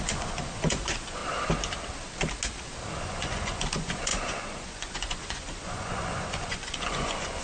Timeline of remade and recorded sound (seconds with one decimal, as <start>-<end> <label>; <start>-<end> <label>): 0.0-1.2 remade; 1.2-3.0 recorded; 3.0-7.4 remade